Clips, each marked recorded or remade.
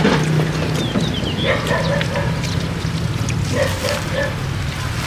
recorded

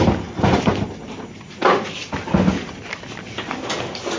recorded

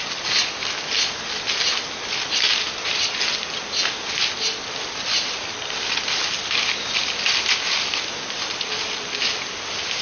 recorded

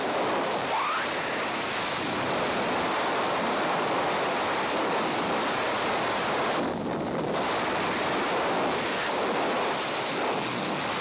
recorded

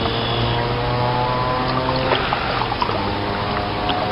recorded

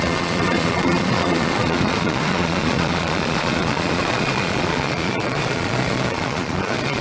remade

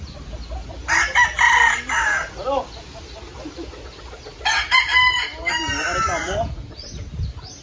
recorded